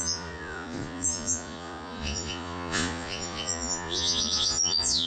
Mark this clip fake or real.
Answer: fake